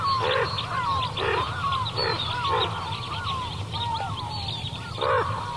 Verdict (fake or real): real